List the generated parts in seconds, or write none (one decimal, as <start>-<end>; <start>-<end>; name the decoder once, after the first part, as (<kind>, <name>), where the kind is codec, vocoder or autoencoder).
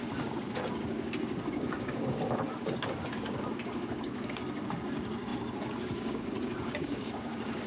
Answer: 0.0-7.7 (codec, DAC)